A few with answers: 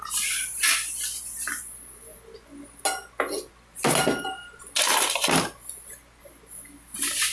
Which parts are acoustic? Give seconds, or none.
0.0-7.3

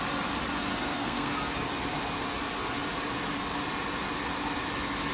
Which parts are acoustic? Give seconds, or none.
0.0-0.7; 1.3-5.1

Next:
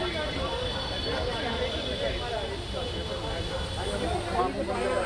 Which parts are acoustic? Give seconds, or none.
0.0-5.1

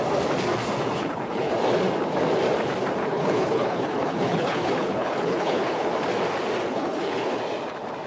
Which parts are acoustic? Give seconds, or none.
0.0-1.0; 1.5-3.1; 5.9-6.7; 7.4-8.1

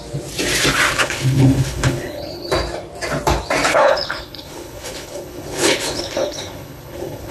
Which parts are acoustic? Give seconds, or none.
0.0-0.9; 2.5-3.7

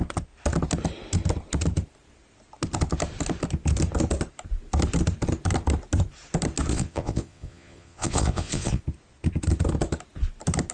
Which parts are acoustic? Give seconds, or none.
0.0-6.7; 8.8-10.7

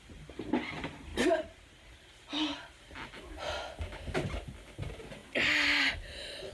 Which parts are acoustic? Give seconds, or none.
0.0-6.5